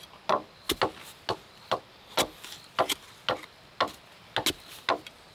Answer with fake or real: real